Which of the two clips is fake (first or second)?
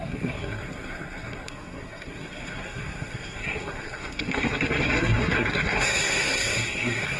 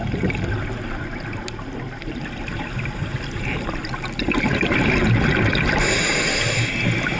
first